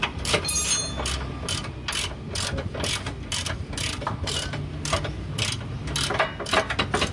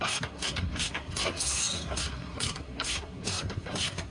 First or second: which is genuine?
first